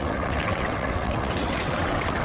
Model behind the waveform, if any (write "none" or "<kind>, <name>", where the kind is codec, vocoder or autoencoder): vocoder, WaveNeXt